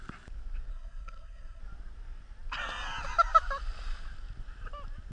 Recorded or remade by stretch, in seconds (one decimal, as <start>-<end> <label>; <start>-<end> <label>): 0.0-0.7 recorded; 0.7-1.6 remade; 1.6-5.1 recorded